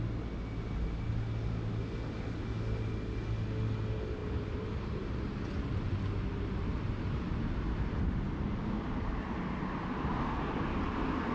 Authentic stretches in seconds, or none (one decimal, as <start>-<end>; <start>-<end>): 0.0-4.2; 5.2-11.3